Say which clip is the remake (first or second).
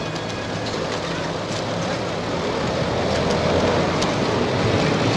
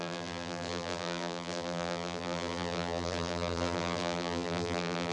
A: second